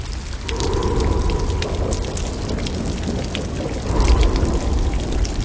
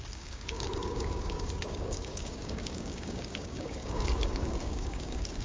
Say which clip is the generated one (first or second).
second